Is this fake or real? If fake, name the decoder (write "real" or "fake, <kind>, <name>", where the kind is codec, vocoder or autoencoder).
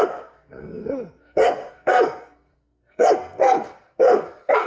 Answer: fake, codec, SNAC